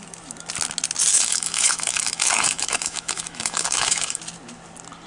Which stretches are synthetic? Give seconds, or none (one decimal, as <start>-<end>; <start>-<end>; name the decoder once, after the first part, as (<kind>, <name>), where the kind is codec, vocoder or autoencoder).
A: 1.1-4.2 (autoencoder, DAC-VAE)